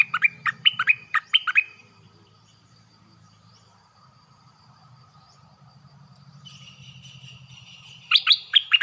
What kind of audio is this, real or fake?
fake